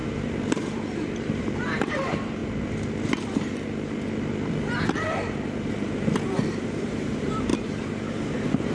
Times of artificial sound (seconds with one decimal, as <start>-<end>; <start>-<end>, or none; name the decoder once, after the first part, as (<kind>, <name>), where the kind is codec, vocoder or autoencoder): 0.0-2.4 (vocoder, BigVGAN v2); 5.7-8.7